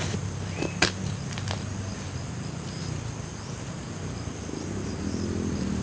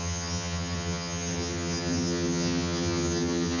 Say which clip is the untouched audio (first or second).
first